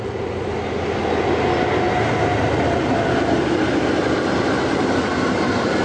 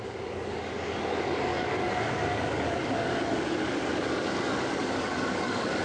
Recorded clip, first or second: first